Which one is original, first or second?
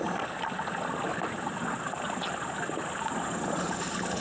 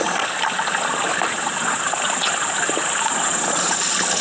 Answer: first